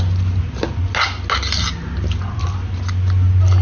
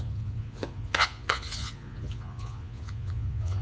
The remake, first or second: second